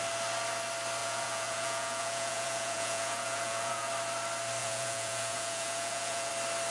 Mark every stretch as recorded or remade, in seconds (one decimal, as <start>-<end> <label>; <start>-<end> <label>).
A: 0.0-1.0 recorded; 1.0-3.9 remade; 3.9-4.6 recorded; 4.6-6.3 remade; 6.3-6.7 recorded